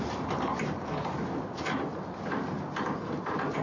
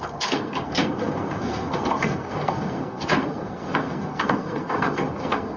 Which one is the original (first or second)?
first